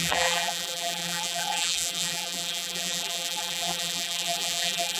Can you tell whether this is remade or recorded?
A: remade